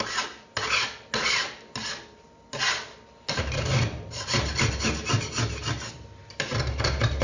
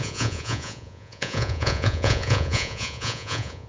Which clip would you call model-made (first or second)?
second